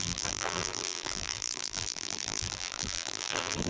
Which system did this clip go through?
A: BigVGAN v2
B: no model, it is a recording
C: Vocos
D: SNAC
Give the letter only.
A